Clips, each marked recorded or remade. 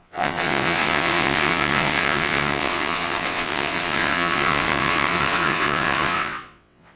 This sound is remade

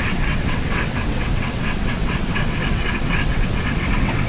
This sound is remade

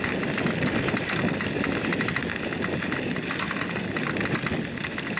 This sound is recorded